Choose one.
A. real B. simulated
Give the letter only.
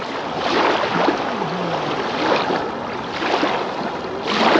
A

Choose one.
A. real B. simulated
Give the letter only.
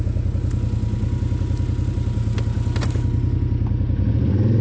A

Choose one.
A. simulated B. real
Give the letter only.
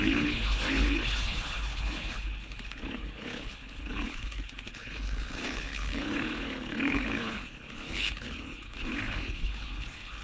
A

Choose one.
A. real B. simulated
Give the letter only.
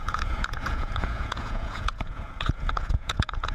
B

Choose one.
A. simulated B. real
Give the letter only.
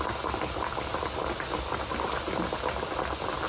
B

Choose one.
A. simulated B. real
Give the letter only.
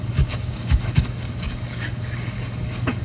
A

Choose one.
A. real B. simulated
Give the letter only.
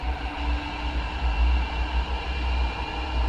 A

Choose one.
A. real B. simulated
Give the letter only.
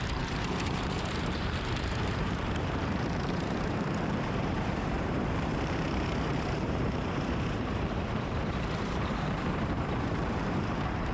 B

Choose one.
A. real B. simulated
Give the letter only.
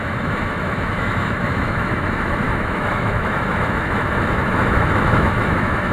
B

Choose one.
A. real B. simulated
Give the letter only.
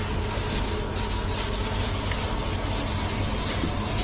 A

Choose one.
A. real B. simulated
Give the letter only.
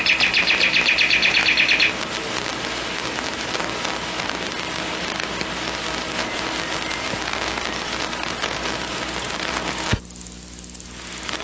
A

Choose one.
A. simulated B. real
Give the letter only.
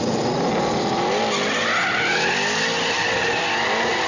B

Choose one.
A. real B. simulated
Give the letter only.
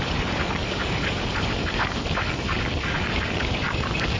A